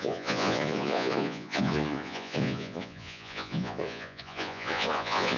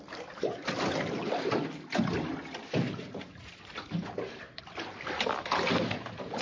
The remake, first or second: first